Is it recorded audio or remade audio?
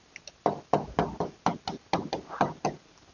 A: recorded